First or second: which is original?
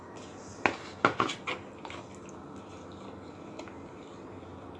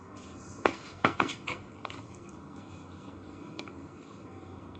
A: first